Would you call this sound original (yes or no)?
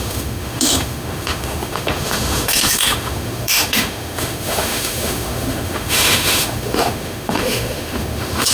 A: no